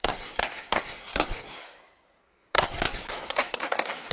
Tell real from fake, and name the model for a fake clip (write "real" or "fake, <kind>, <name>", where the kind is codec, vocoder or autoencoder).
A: fake, codec, SNAC